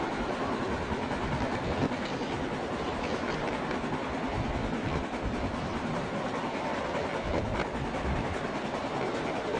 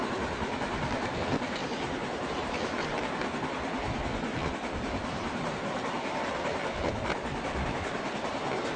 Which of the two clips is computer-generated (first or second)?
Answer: second